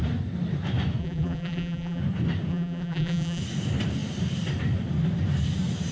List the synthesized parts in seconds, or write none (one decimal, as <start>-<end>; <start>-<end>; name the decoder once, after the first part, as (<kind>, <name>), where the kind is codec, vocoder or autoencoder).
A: 1.0-2.0 (vocoder, BigVGAN v2); 2.5-3.4